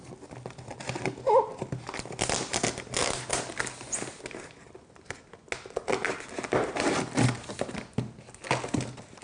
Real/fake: real